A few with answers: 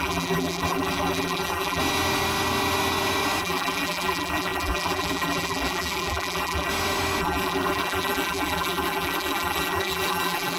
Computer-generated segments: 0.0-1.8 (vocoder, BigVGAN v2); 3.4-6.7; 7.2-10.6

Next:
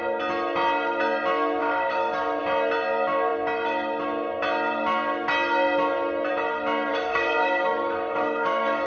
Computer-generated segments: 1.6-2.4 (codec, DAC); 6.9-8.9